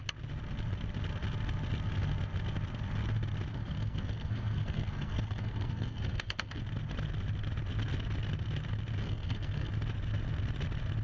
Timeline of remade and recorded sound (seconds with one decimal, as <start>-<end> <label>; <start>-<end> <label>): 0.0-3.5 recorded; 3.5-6.6 remade; 6.6-9.0 recorded; 9.0-9.7 remade; 9.7-11.0 recorded